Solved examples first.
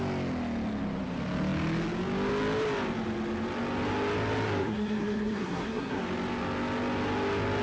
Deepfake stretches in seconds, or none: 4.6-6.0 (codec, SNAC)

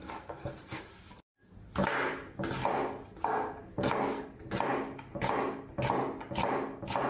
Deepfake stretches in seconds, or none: 0.0-0.8 (codec, SNAC); 3.7-4.2

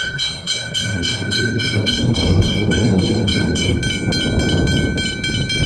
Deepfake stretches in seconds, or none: 0.0-3.8 (codec, SNAC)

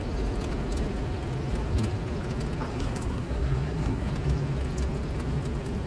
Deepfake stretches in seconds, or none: 2.7-4.1 (codec, SNAC)